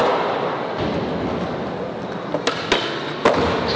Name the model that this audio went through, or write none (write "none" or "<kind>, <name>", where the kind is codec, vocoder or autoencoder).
none